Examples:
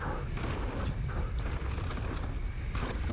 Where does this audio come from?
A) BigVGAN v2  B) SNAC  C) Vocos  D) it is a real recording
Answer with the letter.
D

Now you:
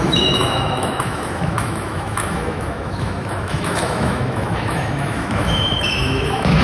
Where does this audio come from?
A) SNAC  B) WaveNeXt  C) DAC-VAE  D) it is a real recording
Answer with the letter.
C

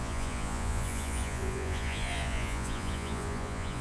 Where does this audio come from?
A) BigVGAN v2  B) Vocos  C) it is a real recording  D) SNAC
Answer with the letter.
B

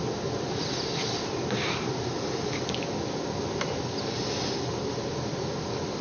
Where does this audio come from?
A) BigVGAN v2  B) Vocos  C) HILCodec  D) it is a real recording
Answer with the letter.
D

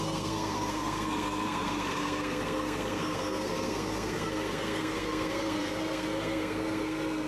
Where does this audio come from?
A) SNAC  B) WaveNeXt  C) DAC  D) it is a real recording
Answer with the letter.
A